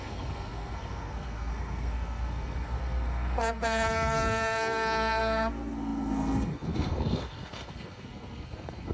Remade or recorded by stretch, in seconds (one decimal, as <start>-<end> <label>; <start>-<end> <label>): 0.0-8.9 remade